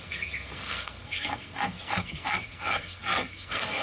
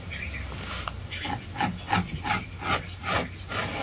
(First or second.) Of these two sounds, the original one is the second